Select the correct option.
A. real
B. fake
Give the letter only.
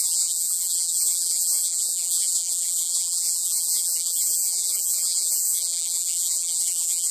B